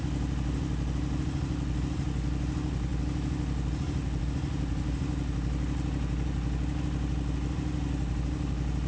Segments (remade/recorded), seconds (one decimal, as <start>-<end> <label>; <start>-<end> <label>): 0.0-8.9 recorded